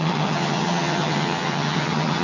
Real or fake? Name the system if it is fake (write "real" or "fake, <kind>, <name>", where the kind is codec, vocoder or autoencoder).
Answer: fake, vocoder, HiFi-GAN